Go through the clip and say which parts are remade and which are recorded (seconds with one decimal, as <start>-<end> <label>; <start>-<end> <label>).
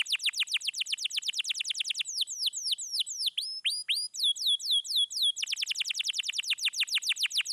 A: 0.0-7.5 recorded